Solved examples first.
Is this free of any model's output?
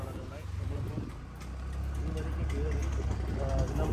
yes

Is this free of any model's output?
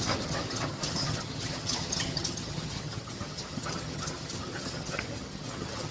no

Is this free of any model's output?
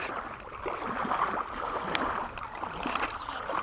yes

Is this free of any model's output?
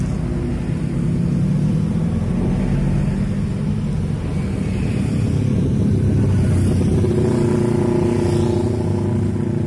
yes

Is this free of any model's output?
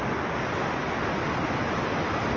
yes